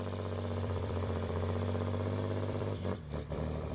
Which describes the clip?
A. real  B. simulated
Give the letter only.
B